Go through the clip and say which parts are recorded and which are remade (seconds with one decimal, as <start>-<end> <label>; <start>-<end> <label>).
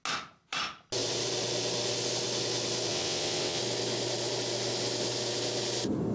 0.0-2.9 recorded; 2.9-3.6 remade; 3.6-6.1 recorded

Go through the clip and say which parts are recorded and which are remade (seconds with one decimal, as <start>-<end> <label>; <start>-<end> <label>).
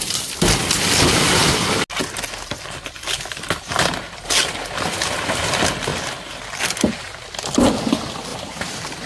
0.0-9.1 recorded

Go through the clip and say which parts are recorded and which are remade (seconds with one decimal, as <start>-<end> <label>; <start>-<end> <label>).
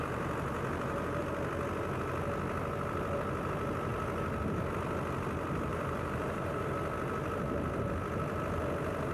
0.0-1.2 remade; 1.2-5.7 recorded; 5.7-6.7 remade; 6.7-9.1 recorded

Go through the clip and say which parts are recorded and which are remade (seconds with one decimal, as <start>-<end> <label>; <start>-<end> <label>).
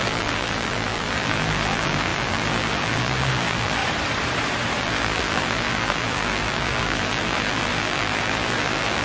0.0-3.8 remade; 3.8-4.8 recorded; 4.8-9.0 remade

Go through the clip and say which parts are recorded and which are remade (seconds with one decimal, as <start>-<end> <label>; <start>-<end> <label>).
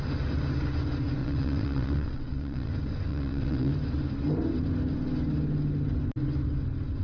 0.0-1.2 recorded; 1.2-2.7 remade; 2.7-3.1 recorded; 3.1-3.7 remade; 3.7-7.0 recorded